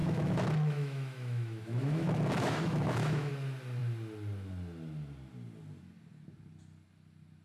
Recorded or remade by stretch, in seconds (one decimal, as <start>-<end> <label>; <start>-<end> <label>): 0.0-3.3 remade; 3.3-7.4 recorded